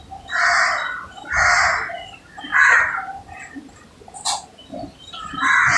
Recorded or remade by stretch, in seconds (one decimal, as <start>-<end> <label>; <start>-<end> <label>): 0.0-5.8 recorded